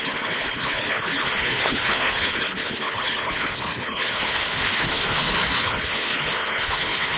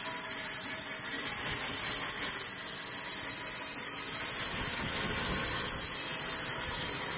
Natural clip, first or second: second